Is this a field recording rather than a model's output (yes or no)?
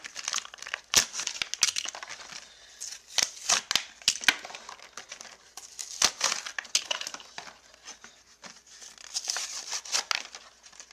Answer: yes